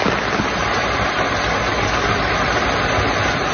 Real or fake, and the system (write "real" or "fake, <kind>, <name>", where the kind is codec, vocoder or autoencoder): real